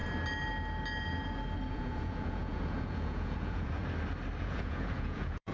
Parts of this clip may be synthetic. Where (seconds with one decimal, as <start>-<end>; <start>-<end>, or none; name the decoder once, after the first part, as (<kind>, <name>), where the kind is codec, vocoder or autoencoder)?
1.7-3.8 (vocoder, Vocos); 4.4-5.5